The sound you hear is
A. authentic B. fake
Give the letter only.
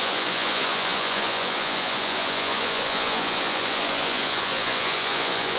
B